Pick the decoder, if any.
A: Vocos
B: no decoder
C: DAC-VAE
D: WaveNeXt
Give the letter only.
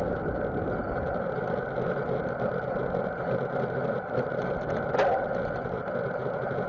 B